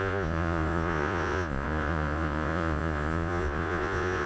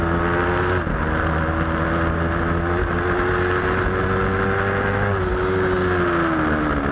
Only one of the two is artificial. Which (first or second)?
first